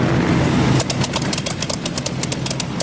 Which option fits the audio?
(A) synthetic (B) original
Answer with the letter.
B